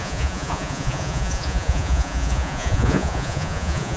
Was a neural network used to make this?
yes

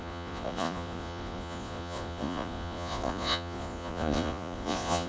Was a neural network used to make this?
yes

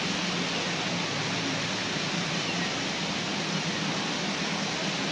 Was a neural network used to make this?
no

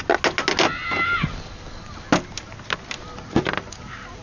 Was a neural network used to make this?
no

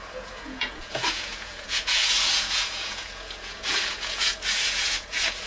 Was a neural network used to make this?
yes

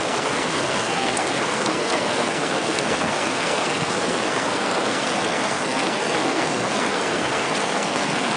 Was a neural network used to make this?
yes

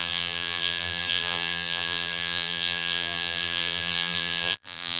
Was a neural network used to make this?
yes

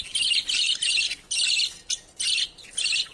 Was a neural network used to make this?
no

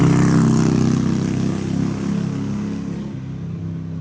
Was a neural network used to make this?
no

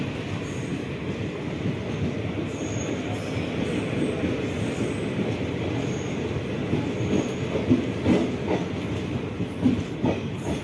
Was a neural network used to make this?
no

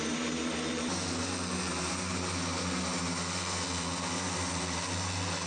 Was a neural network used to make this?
no